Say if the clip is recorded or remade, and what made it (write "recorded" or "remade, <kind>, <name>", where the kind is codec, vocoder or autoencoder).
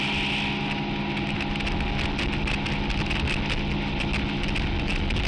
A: recorded